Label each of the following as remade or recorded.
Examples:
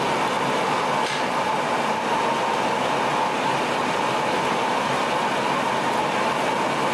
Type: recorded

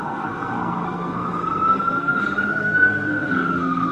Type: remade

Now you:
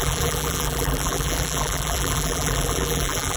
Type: remade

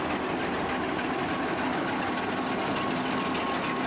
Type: recorded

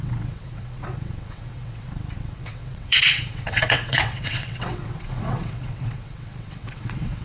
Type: remade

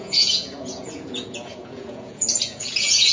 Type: remade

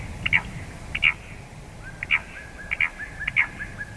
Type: recorded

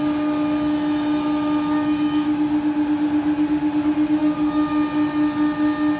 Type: recorded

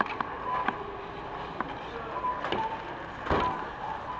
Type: recorded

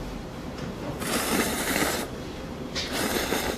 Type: remade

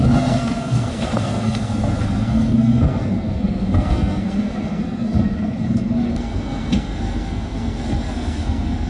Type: remade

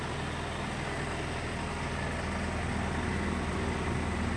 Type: recorded